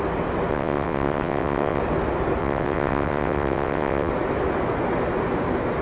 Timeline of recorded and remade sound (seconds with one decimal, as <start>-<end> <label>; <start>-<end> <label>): 0.0-0.5 recorded; 0.5-1.8 remade; 1.8-2.4 recorded; 2.4-4.1 remade; 4.1-5.8 recorded